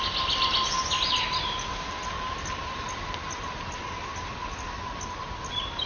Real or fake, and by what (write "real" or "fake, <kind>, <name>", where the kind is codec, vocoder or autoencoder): real